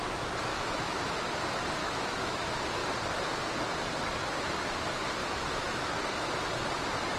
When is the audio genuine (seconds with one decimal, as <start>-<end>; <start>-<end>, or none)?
0.0-0.5; 1.3-1.8; 2.4-5.2; 5.8-7.2